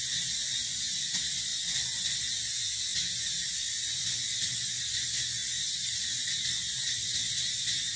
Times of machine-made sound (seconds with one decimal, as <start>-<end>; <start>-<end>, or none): none

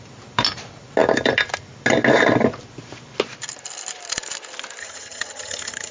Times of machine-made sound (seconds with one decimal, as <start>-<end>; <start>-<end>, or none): 4.8-5.9